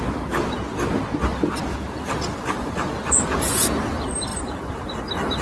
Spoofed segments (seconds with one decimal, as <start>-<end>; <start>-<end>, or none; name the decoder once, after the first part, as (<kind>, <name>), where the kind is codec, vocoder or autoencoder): 1.7-2.7 (vocoder, BigVGAN v2); 4.3-5.4